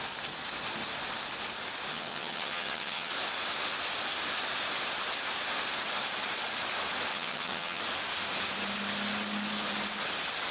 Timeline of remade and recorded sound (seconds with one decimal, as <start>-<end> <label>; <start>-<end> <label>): 0.0-1.9 recorded; 1.9-3.1 remade; 3.1-7.1 recorded; 7.1-7.8 remade; 7.8-10.5 recorded